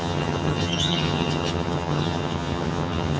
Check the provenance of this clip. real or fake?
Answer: fake